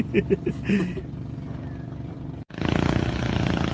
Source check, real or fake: real